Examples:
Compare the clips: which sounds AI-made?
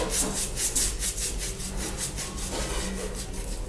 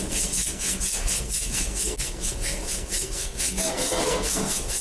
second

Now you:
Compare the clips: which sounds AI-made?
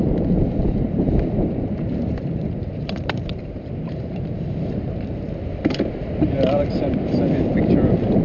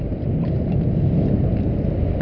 first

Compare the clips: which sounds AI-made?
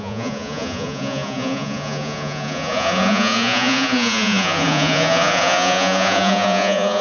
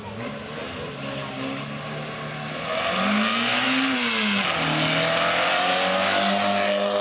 first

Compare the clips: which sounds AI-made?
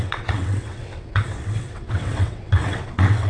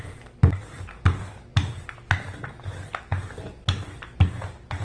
first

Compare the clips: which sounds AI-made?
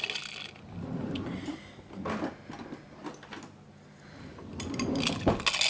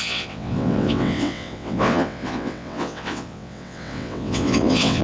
second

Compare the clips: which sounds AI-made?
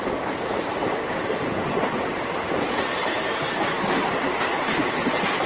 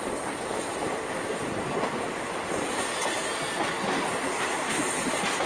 first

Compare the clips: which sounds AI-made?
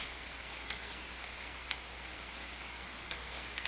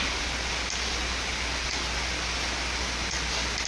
first